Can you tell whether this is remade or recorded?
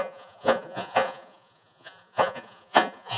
remade